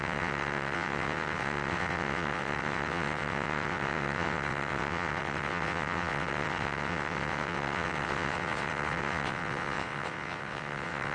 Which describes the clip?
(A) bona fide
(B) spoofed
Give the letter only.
B